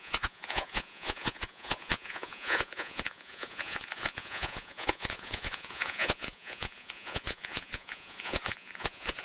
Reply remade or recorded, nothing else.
remade